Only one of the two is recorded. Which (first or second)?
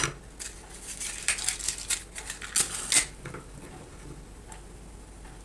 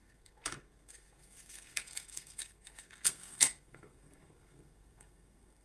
first